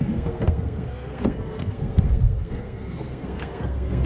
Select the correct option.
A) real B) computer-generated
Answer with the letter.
B